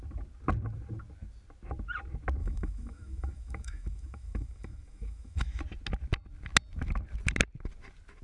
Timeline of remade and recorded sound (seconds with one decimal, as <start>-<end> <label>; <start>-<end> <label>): 0.0-2.4 recorded; 2.4-5.6 remade; 5.6-8.2 recorded